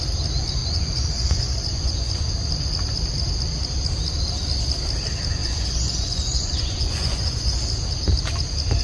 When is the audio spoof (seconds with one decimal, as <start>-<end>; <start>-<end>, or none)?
0.6-2.3; 5.4-7.6